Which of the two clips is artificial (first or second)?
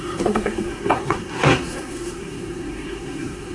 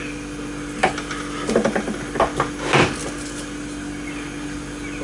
first